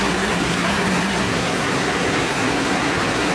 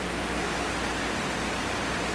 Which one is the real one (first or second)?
second